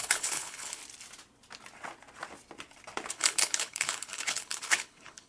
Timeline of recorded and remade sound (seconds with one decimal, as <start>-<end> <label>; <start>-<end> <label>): 0.0-0.8 remade; 0.8-3.1 recorded; 3.1-5.3 remade